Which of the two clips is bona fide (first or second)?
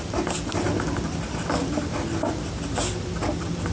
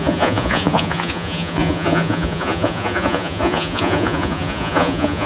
first